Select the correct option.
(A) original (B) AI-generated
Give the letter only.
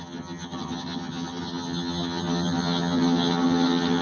B